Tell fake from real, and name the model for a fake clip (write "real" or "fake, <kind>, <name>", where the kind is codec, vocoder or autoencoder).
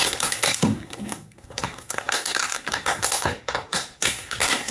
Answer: fake, codec, SNAC